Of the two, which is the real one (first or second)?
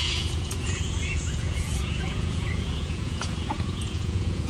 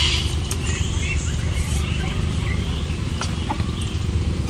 second